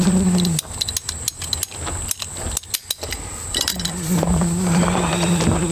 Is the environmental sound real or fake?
real